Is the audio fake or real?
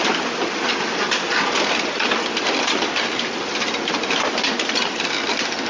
real